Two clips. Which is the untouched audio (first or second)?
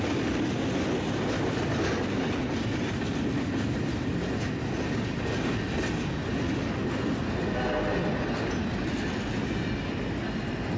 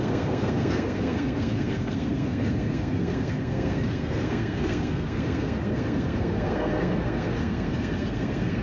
first